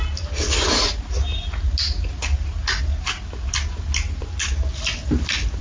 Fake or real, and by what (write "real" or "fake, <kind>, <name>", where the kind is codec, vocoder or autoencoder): real